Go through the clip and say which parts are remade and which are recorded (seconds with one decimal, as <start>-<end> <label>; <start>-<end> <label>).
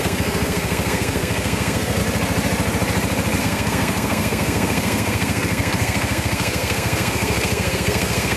0.0-2.0 remade; 2.0-3.4 recorded; 3.4-8.4 remade